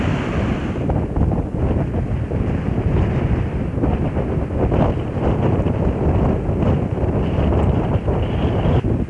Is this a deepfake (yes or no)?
no